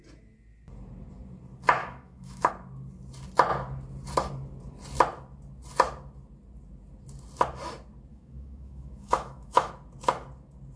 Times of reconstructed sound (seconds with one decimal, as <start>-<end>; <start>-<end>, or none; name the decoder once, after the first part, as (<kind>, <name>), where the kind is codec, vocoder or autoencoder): 1.8-2.5 (autoencoder, DAC-VAE); 8.1-9.7